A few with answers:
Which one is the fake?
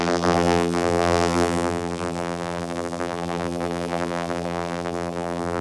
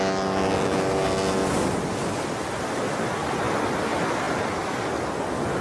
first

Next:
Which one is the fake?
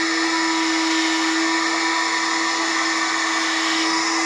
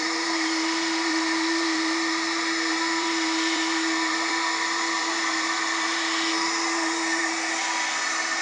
second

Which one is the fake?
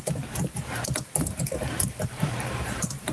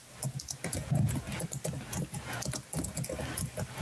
first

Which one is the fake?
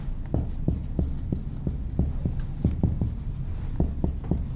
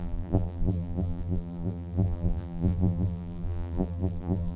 second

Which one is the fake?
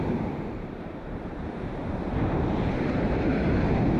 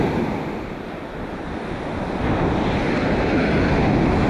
first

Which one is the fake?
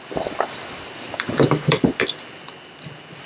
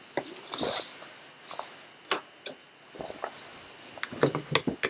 first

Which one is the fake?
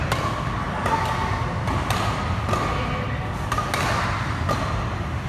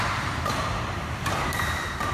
second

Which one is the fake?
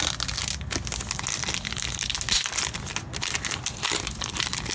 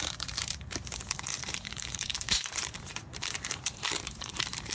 second